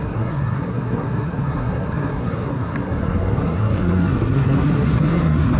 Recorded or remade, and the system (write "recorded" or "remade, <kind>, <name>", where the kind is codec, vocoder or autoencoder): remade, codec, SNAC